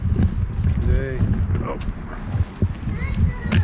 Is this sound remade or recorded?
recorded